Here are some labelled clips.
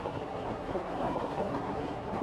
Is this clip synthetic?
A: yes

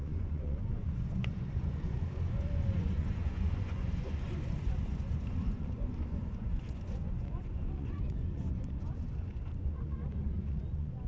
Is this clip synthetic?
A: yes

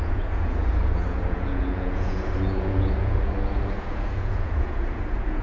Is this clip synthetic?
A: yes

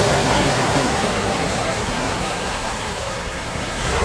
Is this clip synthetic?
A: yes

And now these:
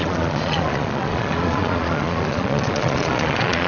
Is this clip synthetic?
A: yes